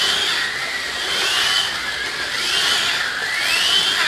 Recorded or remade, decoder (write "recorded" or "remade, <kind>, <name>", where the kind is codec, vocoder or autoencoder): recorded